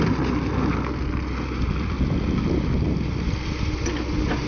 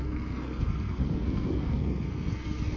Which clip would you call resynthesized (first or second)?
second